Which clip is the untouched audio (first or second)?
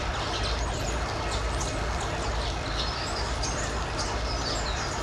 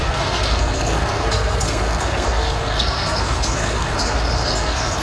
first